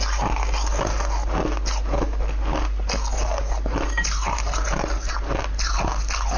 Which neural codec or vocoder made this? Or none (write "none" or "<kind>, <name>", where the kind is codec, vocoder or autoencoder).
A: none